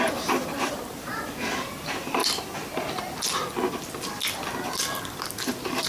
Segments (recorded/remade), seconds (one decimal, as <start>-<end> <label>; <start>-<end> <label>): 0.0-2.2 remade; 2.2-5.9 recorded